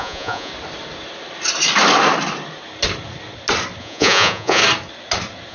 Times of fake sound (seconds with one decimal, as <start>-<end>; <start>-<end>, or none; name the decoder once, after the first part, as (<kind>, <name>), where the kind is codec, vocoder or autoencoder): 0.0-0.5 (vocoder, Vocos); 3.8-4.6